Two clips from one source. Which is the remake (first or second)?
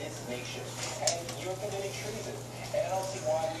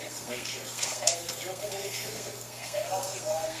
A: second